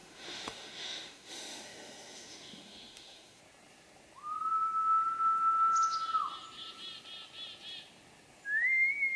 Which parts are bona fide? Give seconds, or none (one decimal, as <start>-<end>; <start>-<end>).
3.4-9.2